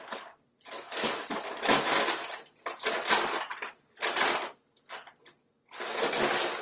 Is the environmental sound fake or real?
real